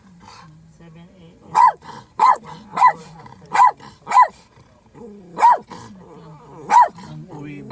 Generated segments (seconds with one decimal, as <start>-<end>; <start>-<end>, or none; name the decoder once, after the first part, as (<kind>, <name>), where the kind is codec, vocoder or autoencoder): 1.2-3.7 (vocoder, Vocos)